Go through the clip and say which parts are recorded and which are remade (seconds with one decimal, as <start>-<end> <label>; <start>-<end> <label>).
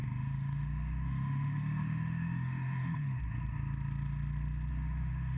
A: 0.0-3.2 remade; 3.2-4.7 recorded; 4.7-5.4 remade